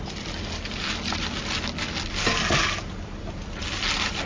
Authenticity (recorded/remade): recorded